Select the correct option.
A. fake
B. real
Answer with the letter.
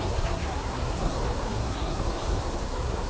A